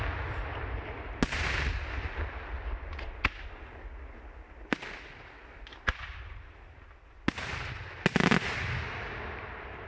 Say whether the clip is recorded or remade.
recorded